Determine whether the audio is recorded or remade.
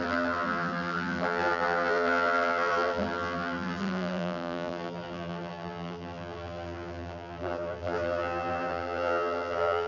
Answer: remade